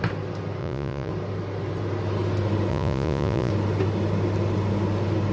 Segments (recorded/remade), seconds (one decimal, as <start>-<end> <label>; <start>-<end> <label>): 0.0-0.6 recorded; 0.6-1.1 remade; 1.1-2.7 recorded; 2.7-3.5 remade; 3.5-5.3 recorded